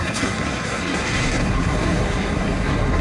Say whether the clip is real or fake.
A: fake